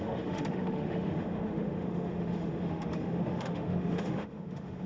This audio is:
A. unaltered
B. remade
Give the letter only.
B